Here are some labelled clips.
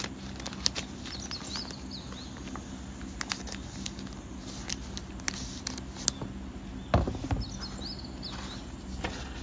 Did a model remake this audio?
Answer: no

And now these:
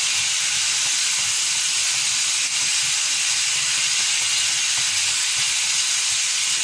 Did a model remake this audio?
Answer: no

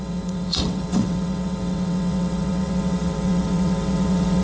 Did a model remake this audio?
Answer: yes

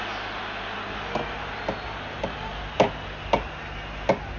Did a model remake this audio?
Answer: no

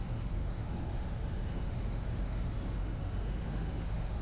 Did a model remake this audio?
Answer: yes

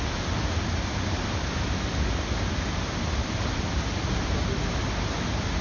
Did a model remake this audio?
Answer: no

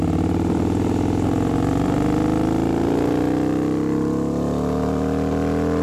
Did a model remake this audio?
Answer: yes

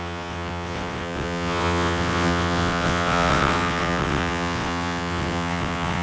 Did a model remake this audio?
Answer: yes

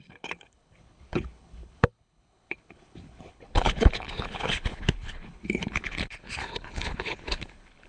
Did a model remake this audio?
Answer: yes